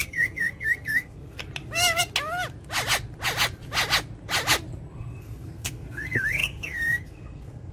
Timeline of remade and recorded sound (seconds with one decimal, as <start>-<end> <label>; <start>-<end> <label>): 0.0-1.4 remade; 1.4-5.2 recorded; 5.2-7.7 remade

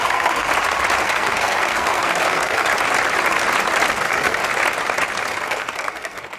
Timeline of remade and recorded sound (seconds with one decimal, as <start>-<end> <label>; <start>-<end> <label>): 0.0-0.5 remade; 0.5-1.0 recorded; 1.0-2.7 remade; 2.7-3.9 recorded; 3.9-4.4 remade; 4.4-5.4 recorded; 5.4-6.4 remade

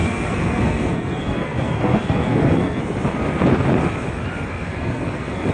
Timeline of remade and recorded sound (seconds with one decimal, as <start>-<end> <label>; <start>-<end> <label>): 0.0-2.8 remade; 2.8-4.7 recorded; 4.7-5.5 remade

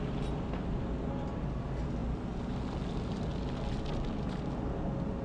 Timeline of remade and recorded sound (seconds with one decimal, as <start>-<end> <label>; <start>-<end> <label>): 0.0-5.2 recorded

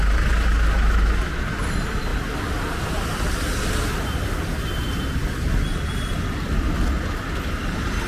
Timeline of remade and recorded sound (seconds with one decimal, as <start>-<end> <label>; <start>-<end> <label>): 0.0-8.1 recorded

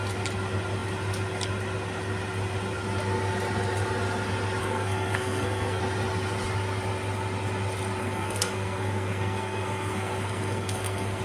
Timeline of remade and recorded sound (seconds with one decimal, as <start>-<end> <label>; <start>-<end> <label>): 0.0-4.6 recorded; 4.6-5.8 remade; 5.8-8.0 recorded; 8.0-11.2 remade

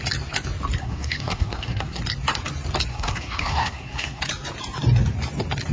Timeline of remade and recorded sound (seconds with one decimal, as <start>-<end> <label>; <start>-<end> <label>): 0.0-0.8 recorded; 0.8-2.0 remade; 2.0-2.9 recorded; 2.9-4.2 remade; 4.2-5.7 recorded